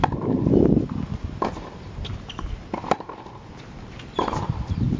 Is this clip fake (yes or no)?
yes